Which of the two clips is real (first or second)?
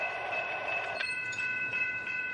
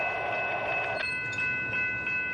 second